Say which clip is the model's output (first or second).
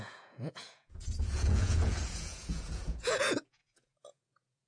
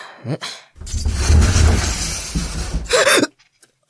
first